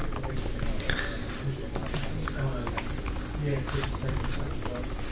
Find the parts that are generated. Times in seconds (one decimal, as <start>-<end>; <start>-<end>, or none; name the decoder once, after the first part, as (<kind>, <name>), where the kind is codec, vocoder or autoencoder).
none